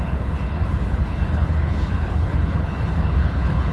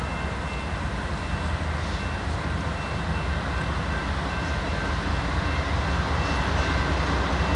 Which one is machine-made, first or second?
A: first